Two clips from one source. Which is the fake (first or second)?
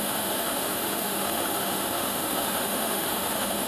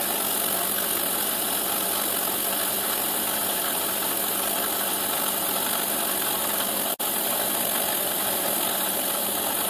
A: first